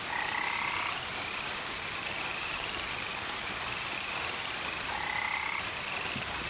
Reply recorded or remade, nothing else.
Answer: remade